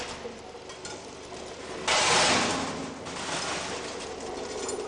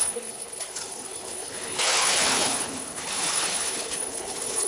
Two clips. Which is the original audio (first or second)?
first